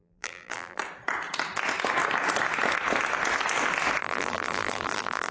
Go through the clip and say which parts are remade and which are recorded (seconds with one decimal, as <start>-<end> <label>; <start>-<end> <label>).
0.0-0.8 remade; 0.8-4.0 recorded; 4.0-5.3 remade